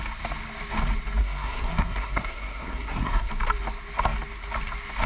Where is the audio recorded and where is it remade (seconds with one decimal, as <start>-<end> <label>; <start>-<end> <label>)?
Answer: 0.0-1.2 recorded; 1.2-3.3 remade; 3.3-5.1 recorded